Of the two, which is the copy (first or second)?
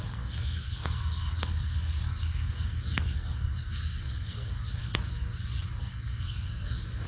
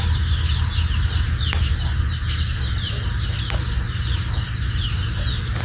first